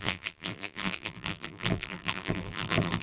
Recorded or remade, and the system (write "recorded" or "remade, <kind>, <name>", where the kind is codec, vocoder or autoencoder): remade, vocoder, BigVGAN v2